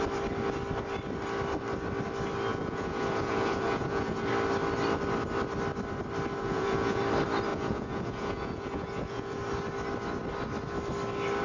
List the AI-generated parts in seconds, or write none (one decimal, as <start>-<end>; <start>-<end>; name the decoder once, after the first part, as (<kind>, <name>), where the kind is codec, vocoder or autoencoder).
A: 2.5-4.3 (vocoder, Vocos); 6.4-7.0; 7.5-9.4